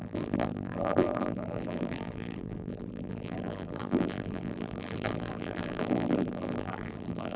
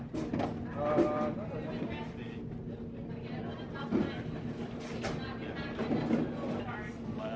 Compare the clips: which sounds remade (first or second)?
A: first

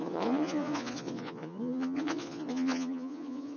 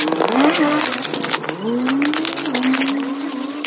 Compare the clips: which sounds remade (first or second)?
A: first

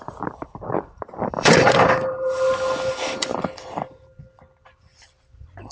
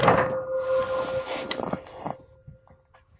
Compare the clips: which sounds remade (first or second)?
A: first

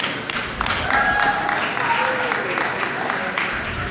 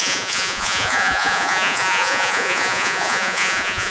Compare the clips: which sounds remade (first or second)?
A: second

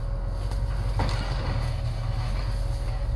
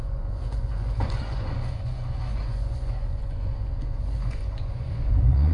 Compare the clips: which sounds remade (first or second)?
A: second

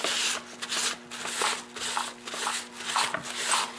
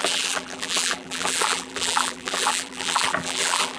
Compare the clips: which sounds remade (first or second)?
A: second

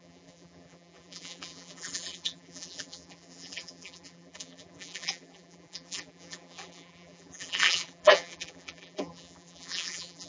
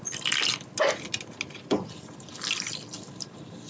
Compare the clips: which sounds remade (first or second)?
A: first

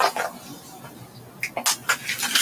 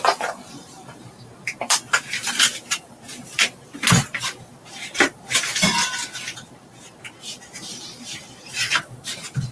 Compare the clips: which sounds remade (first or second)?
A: second